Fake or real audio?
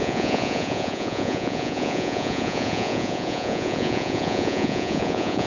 fake